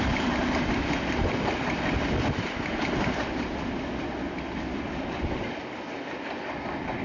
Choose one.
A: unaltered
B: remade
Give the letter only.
A